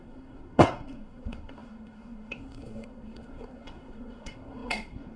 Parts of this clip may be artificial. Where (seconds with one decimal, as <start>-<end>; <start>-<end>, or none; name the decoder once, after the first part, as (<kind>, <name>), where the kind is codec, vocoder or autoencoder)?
0.0-5.2 (codec, SNAC)